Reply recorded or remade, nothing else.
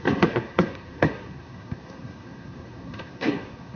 remade